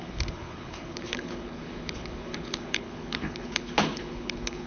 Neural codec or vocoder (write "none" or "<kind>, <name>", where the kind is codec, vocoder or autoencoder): codec, HILCodec